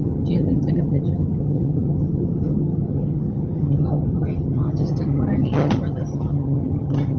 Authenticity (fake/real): fake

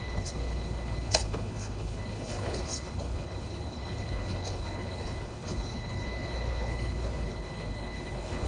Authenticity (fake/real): fake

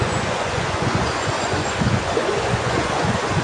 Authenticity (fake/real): fake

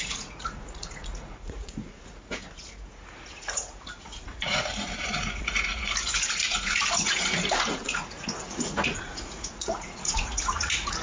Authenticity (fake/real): fake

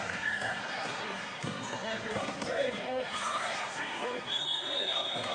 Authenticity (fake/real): fake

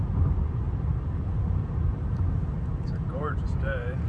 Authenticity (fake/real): fake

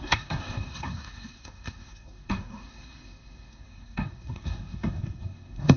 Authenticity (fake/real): fake